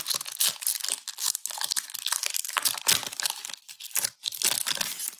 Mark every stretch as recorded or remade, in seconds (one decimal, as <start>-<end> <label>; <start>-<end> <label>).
0.0-5.2 recorded